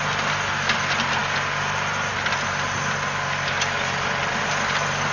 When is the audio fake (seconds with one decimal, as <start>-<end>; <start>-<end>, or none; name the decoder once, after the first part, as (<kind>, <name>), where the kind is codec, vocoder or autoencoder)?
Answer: none